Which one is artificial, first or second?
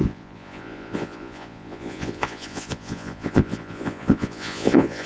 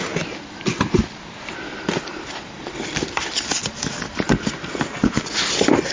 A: first